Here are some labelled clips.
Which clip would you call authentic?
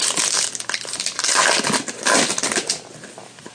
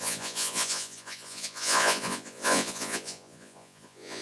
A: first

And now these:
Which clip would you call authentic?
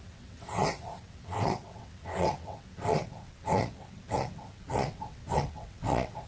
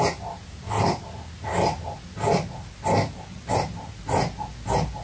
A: second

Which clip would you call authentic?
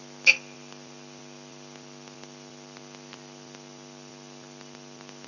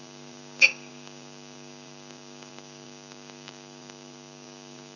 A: first